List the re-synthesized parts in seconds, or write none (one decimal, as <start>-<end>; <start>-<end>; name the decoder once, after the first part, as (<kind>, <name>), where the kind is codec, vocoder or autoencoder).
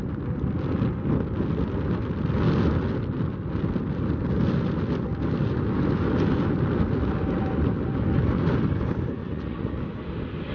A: 9.2-9.8 (vocoder, Vocos)